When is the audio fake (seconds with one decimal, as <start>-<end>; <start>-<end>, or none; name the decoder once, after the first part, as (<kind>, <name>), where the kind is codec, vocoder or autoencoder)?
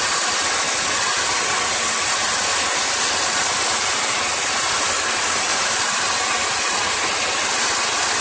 5.5-6.1 (vocoder, BigVGAN v2)